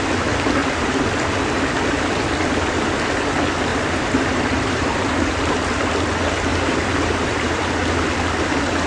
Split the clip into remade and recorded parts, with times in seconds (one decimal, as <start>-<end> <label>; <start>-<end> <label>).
0.0-0.6 recorded; 0.6-1.1 remade; 1.1-3.7 recorded; 3.7-5.5 remade; 5.5-6.5 recorded; 6.5-7.6 remade; 7.6-8.9 recorded